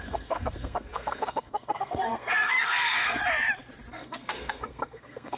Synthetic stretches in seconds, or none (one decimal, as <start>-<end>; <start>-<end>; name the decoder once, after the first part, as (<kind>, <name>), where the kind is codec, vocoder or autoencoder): 0.0-3.2 (codec, SNAC); 3.9-5.4